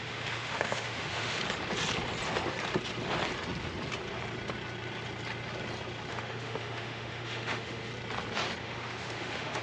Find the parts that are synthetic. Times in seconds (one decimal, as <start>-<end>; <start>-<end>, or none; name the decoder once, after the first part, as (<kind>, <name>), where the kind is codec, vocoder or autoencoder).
0.0-1.4 (autoencoder, DAC-VAE); 6.1-7.9; 8.6-9.6